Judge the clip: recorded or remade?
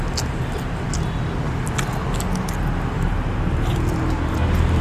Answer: recorded